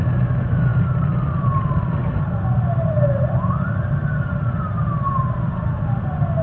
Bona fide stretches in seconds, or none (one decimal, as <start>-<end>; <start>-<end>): 0.0-6.4